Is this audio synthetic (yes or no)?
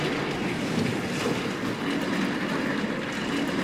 no